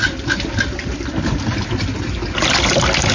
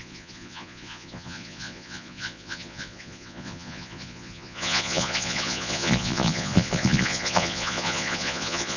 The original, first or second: first